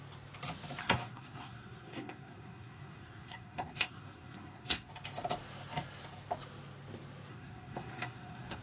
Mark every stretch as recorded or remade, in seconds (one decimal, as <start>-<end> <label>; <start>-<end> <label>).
0.0-0.8 recorded; 0.8-4.9 remade; 4.9-7.3 recorded; 7.3-8.6 remade